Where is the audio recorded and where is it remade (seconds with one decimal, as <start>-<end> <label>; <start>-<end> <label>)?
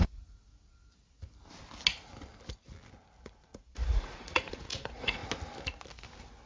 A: 0.0-0.5 remade; 0.5-3.2 recorded; 3.2-5.2 remade; 5.2-6.5 recorded